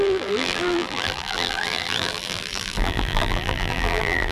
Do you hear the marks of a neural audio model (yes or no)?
yes